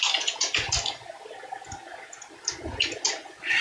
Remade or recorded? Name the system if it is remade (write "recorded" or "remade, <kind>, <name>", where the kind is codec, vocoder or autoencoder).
recorded